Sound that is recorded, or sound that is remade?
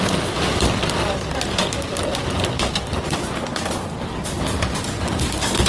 recorded